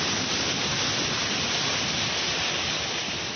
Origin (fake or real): real